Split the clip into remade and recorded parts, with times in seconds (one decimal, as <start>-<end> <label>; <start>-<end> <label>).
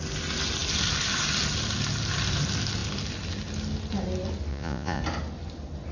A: 0.0-4.5 recorded; 4.5-5.0 remade; 5.0-5.9 recorded